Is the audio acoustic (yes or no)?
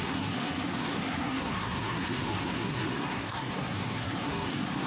no